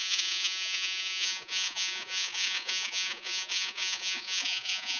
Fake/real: fake